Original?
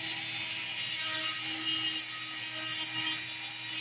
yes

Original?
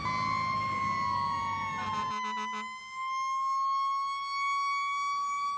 yes